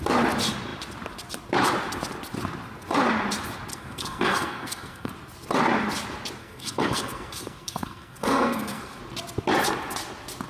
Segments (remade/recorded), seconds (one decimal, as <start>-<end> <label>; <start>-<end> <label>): 0.0-3.7 recorded; 3.7-5.1 remade; 5.1-6.4 recorded; 6.4-9.0 remade; 9.0-10.5 recorded